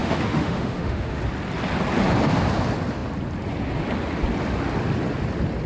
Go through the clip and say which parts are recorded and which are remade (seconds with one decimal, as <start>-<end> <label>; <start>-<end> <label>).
0.0-1.2 remade; 1.2-5.7 recorded